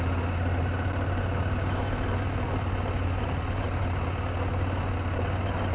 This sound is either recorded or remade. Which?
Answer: recorded